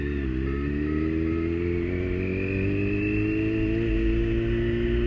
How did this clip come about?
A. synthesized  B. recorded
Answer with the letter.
B